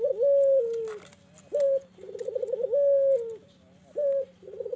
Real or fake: real